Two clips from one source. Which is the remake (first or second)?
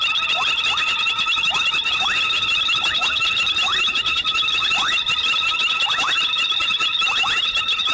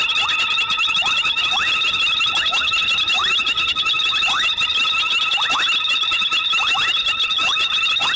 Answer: first